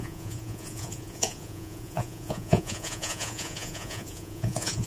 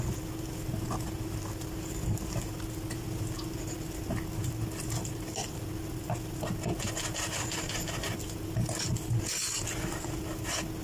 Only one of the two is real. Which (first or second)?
second